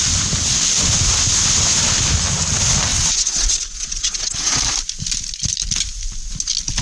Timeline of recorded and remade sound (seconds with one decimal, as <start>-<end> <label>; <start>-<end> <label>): 0.0-2.9 recorded; 2.9-4.6 remade; 4.6-6.8 recorded